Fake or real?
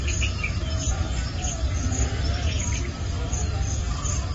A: real